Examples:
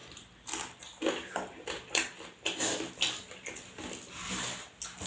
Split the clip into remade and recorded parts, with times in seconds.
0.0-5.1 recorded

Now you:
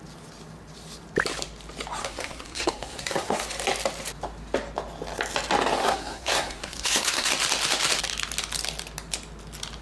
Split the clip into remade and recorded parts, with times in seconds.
0.0-2.0 recorded; 2.0-3.4 remade; 3.4-5.8 recorded; 5.8-7.3 remade; 7.3-9.8 recorded